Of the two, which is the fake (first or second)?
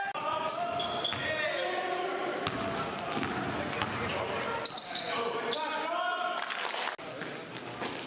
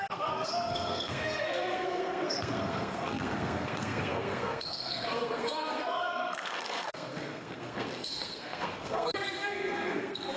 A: second